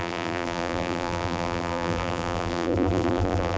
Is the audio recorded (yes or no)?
no